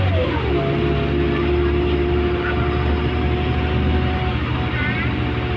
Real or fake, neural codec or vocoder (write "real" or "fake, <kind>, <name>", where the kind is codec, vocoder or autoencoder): real